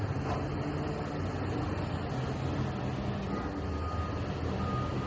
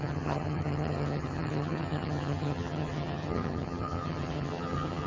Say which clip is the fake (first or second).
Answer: second